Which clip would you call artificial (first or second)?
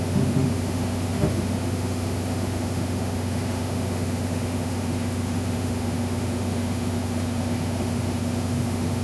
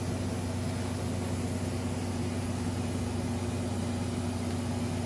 first